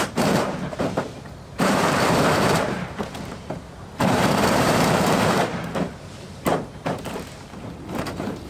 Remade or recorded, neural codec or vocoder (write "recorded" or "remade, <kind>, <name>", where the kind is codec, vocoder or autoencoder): remade, vocoder, BigVGAN v2